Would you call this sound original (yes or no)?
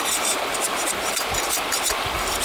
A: yes